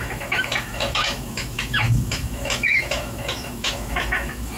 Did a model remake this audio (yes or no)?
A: yes